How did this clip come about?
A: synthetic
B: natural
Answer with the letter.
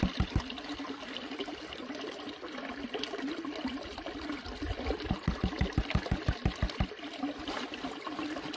B